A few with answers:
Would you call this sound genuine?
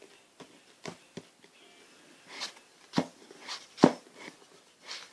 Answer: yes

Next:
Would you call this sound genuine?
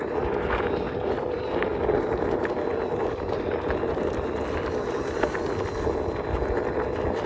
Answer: yes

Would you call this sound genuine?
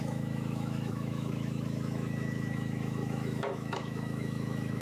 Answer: no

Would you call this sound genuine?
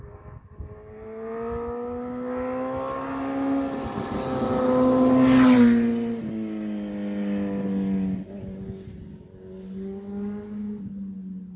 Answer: yes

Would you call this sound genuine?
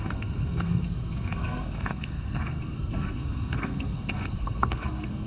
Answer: no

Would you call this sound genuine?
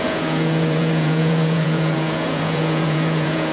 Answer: no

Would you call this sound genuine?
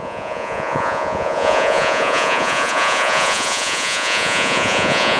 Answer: no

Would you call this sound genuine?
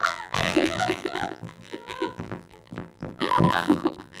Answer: no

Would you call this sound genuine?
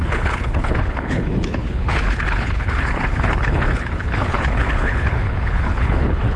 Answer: no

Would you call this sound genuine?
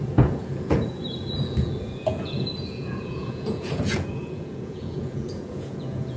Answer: no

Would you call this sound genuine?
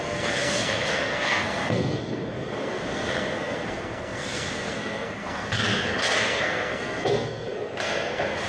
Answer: no